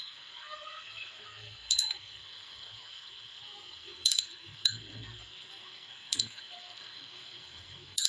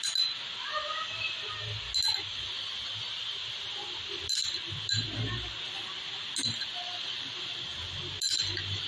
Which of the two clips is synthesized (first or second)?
first